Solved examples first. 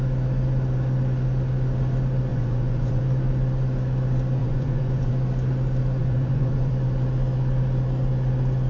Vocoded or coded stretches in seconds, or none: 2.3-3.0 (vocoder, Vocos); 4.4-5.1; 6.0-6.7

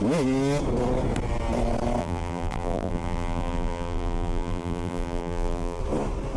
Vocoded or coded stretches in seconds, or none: 2.0-5.8 (vocoder, BigVGAN v2)

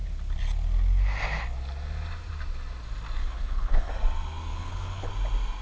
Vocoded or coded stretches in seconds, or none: 3.2-3.9 (codec, HILCodec); 4.5-5.1

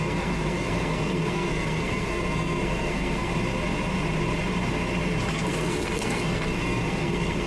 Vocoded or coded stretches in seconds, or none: 0.0-3.3 (codec, SNAC); 5.3-7.5